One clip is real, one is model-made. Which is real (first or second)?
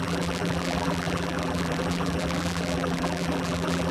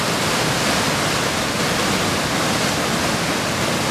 second